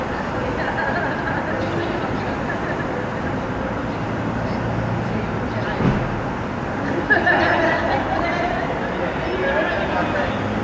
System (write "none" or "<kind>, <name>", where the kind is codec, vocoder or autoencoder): none